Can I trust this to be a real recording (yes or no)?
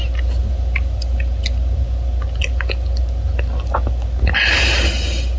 yes